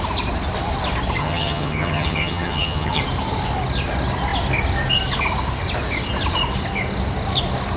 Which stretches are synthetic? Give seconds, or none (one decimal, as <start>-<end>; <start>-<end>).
1.2-3.0